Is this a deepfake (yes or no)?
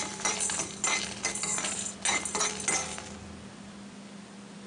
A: no